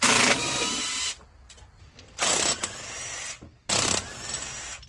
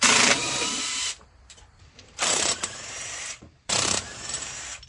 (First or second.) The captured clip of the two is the first